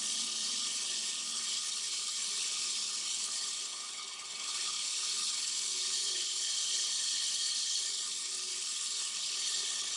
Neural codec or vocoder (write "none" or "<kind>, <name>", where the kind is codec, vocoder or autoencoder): codec, HILCodec